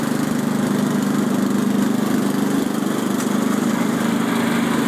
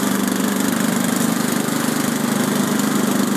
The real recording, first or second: first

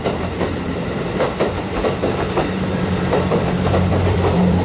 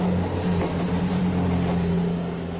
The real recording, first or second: second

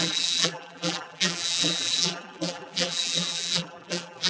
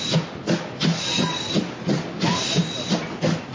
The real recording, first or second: second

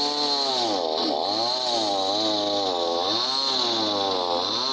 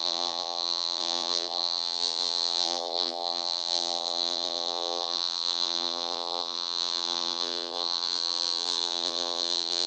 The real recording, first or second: first